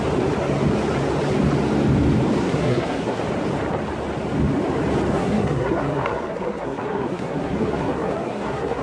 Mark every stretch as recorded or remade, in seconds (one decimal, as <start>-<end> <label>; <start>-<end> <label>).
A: 0.0-2.4 recorded; 2.4-3.2 remade; 3.2-5.1 recorded; 5.1-8.8 remade